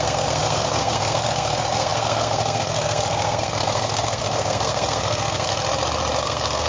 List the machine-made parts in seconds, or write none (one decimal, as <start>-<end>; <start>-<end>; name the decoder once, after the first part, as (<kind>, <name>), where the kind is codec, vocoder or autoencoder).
0.0-5.5 (codec, SNAC); 6.2-6.7